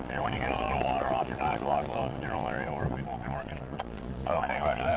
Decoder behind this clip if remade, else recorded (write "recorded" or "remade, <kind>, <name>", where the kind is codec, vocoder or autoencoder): remade, vocoder, Vocos